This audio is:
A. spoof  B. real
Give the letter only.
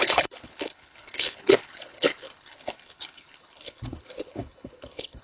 A